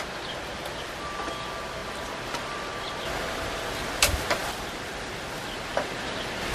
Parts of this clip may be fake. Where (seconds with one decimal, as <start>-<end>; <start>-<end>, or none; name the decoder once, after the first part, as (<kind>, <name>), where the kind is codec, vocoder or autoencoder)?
none

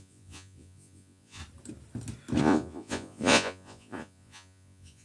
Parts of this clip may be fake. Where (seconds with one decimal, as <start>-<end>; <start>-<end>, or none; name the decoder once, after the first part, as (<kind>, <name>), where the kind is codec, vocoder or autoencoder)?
0.0-1.4 (vocoder, Vocos); 2.4-5.0